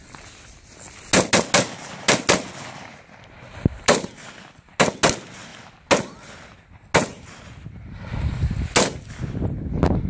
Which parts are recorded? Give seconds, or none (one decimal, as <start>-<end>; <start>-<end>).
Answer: 0.0-10.1